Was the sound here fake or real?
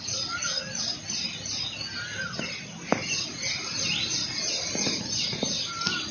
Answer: real